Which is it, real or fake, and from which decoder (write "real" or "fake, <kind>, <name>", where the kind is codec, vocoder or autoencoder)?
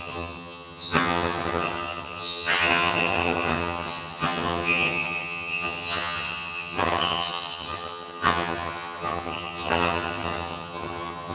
fake, vocoder, HiFi-GAN